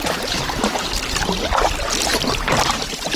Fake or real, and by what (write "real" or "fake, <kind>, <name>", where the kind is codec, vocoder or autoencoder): real